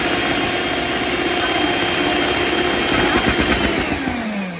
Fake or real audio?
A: real